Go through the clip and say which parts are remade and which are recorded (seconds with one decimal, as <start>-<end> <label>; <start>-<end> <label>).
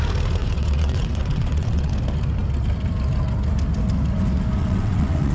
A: 0.0-0.4 recorded; 0.4-1.9 remade; 1.9-4.6 recorded; 4.6-5.3 remade